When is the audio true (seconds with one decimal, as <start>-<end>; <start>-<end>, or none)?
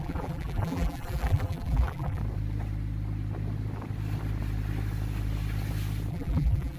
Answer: 2.2-6.1